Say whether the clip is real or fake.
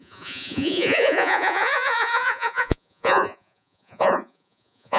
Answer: fake